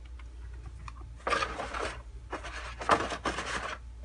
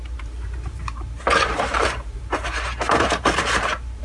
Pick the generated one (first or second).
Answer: second